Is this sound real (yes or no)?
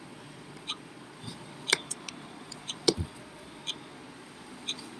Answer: no